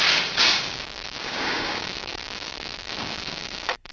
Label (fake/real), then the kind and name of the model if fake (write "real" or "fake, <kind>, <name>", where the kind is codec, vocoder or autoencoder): fake, codec, DAC